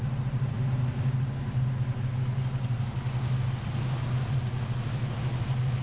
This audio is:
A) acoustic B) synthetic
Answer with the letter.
A